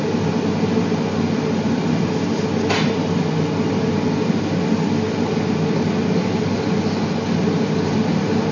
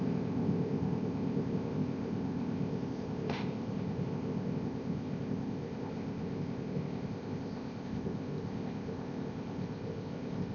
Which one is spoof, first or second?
second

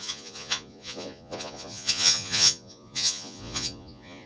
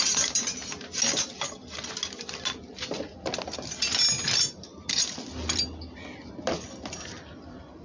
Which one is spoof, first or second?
first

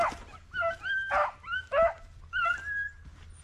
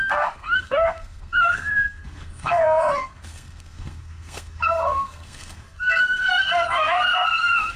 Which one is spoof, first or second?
second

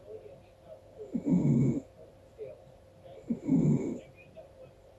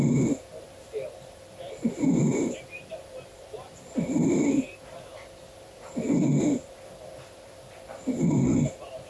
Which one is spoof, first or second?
second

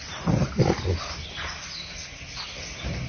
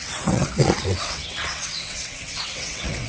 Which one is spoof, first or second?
second